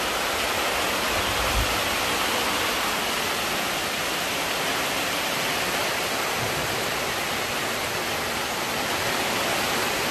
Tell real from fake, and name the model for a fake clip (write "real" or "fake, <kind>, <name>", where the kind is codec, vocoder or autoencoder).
real